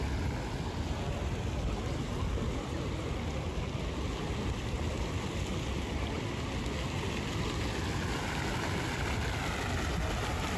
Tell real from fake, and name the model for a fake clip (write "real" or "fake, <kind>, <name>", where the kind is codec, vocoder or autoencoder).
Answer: real